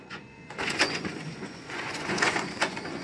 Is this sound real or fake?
fake